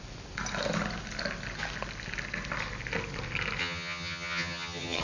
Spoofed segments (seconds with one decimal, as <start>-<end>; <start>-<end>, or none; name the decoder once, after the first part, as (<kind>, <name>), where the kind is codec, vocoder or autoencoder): 3.6-5.0 (vocoder, HiFi-GAN)